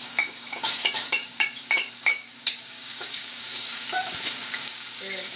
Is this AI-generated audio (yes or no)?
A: yes